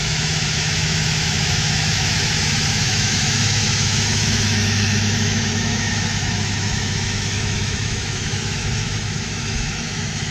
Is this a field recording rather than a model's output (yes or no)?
no